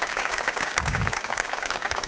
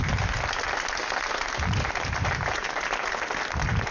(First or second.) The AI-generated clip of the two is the first